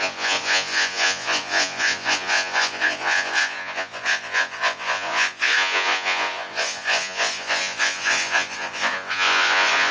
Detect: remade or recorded remade